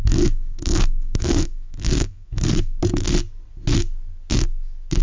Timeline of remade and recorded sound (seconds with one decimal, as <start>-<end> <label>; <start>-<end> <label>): 0.0-2.8 remade; 2.8-5.0 recorded